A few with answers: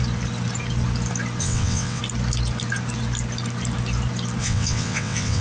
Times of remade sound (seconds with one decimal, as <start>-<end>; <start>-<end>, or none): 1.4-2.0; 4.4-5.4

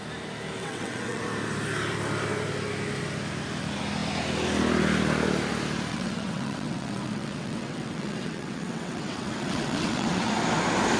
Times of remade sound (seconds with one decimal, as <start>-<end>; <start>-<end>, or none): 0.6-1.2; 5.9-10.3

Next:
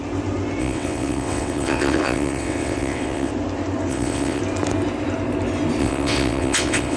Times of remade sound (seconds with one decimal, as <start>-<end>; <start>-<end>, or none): 0.6-3.3; 3.9-4.4; 5.8-7.0